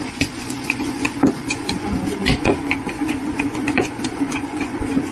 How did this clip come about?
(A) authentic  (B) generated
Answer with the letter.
B